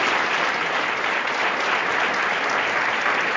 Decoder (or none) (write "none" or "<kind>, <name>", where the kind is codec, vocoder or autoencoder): none